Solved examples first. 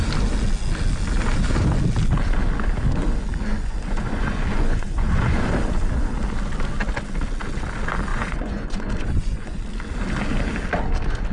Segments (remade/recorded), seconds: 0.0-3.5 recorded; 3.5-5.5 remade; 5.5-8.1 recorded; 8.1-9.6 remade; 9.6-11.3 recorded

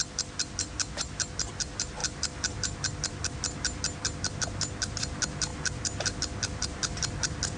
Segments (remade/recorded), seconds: 0.0-7.6 recorded